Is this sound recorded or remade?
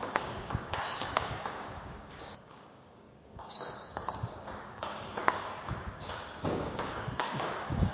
remade